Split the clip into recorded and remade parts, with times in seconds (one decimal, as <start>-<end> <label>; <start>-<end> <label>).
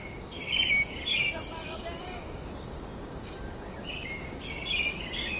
0.0-1.4 remade; 1.4-2.0 recorded; 2.0-5.4 remade